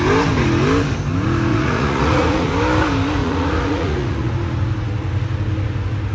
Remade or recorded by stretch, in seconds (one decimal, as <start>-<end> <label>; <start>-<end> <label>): 0.0-1.5 recorded; 1.5-2.5 remade; 2.5-3.2 recorded; 3.2-4.3 remade; 4.3-6.1 recorded